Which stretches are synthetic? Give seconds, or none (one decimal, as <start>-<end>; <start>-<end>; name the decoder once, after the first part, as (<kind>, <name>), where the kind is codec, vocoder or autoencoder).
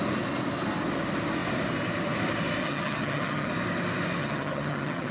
2.6-3.5 (vocoder, HiFi-GAN); 4.2-5.1